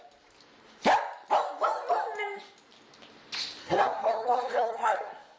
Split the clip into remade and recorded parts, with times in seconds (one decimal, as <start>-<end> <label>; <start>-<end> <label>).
0.0-3.6 recorded; 3.6-5.4 remade